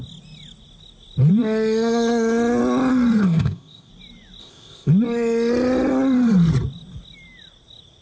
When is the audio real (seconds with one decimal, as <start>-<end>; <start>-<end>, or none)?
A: 0.0-3.2; 3.9-4.4; 4.9-8.0

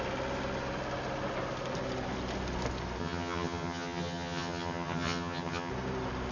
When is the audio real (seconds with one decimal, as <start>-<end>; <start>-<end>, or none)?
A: 0.0-3.0; 5.7-6.3

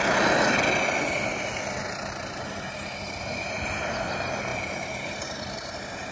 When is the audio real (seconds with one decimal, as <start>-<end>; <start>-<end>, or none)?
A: 0.0-1.8; 4.1-4.5

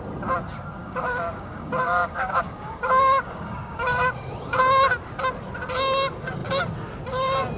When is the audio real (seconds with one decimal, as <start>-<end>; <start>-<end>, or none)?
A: 0.0-0.8; 4.6-7.6

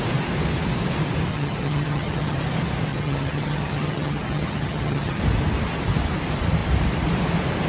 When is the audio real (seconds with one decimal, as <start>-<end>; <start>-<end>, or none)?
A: 0.0-1.3; 2.4-2.9; 5.2-7.7

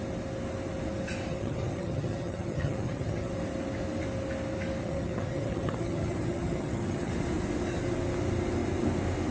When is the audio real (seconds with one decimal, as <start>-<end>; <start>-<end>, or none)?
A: 0.0-1.3; 3.3-4.8; 7.1-9.3